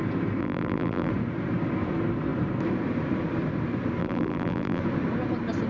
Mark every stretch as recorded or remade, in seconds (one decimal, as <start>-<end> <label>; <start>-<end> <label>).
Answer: 0.0-0.4 recorded; 0.4-1.1 remade; 1.1-4.0 recorded; 4.0-4.8 remade; 4.8-5.7 recorded

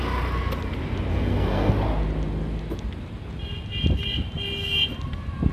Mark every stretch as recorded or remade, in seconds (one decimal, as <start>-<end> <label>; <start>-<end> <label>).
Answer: 0.0-1.1 recorded; 1.1-1.7 remade; 1.7-5.5 recorded

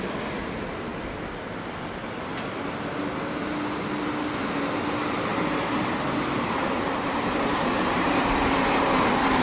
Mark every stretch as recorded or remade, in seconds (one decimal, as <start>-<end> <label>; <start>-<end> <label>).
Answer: 0.0-0.9 recorded; 0.9-1.6 remade; 1.6-5.3 recorded; 5.3-9.4 remade

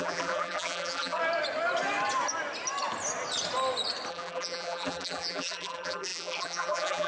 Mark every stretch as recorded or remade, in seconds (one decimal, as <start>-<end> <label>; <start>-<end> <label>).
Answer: 0.0-1.2 remade; 1.2-4.1 recorded; 4.1-7.1 remade

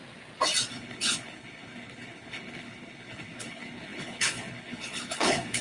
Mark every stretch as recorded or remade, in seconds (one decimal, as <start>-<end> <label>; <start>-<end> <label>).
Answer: 0.0-0.7 recorded; 0.7-5.6 remade

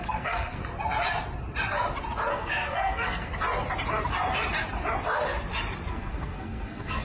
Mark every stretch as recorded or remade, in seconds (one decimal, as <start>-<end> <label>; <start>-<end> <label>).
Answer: 0.0-0.6 remade; 0.6-2.3 recorded; 2.3-3.3 remade; 3.3-5.9 recorded; 5.9-7.0 remade

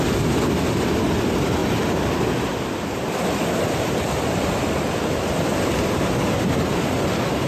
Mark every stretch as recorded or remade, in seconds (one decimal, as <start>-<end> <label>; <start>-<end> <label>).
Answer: 0.0-7.5 recorded

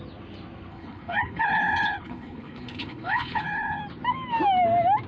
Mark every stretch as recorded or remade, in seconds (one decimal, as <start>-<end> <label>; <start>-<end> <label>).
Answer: 0.0-0.7 recorded; 0.7-3.8 remade; 3.8-5.1 recorded